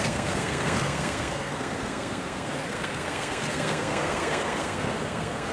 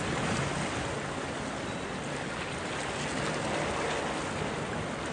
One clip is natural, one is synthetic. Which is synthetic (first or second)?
first